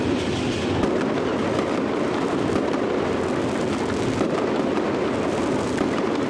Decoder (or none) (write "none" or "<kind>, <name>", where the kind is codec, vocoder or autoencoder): none